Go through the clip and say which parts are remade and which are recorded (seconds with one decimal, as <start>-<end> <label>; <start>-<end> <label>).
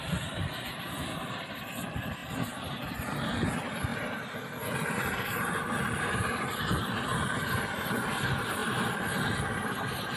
0.0-3.9 remade; 3.9-4.9 recorded; 4.9-8.6 remade; 8.6-9.4 recorded; 9.4-10.2 remade